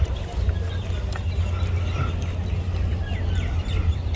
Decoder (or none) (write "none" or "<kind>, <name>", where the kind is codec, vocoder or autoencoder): none